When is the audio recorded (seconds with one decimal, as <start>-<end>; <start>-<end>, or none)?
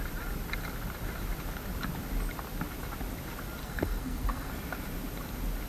0.0-3.6; 4.5-5.7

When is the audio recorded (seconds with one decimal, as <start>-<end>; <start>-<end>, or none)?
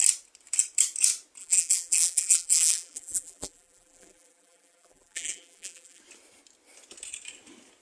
0.0-1.4; 6.0-7.8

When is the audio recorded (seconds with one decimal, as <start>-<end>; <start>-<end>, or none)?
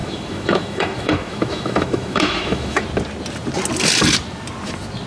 2.8-5.1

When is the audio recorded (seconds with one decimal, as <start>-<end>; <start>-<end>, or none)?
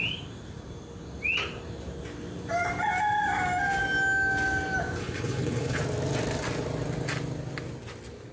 0.0-5.0; 5.8-8.3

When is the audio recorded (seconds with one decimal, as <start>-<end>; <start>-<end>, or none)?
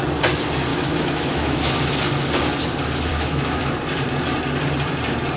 0.0-0.7; 1.9-3.1; 3.7-5.4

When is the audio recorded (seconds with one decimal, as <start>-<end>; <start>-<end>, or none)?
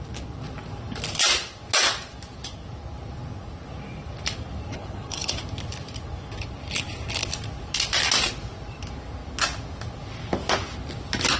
0.0-4.7; 5.4-11.4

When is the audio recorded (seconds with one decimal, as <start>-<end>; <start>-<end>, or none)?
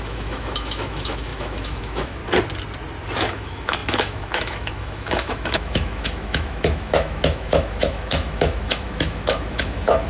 2.2-3.2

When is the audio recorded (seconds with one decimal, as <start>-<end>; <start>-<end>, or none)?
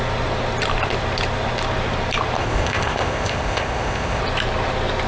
0.0-2.4; 4.2-5.1